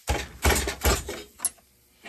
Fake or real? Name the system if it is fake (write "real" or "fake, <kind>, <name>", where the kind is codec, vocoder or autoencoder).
real